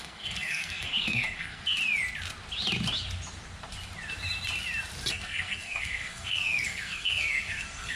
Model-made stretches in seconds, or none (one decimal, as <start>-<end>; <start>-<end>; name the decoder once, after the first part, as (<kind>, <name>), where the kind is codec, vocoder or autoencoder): 0.0-1.8 (codec, SNAC); 5.1-8.0